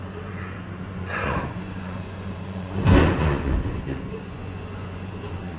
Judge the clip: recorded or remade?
remade